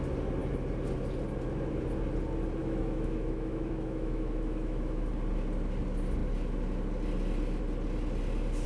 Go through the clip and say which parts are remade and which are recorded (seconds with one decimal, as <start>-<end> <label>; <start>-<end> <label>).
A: 0.0-2.6 recorded; 2.6-5.1 remade; 5.1-8.7 recorded